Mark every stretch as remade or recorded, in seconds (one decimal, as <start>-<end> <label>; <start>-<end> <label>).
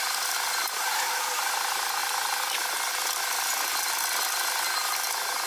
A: 0.0-5.5 recorded